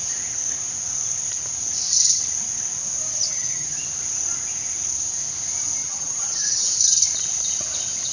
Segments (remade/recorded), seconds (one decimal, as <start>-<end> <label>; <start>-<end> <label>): 0.0-3.1 recorded; 3.1-3.8 remade; 3.8-5.8 recorded; 5.8-6.7 remade; 6.7-8.1 recorded